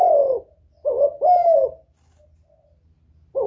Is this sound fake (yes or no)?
no